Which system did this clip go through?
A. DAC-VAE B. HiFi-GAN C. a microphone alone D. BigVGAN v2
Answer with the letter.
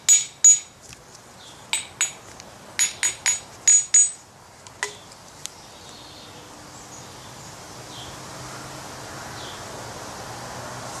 C